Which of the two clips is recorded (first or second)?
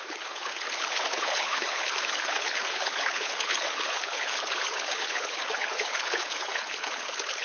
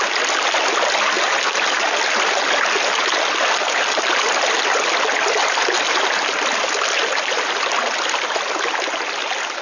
second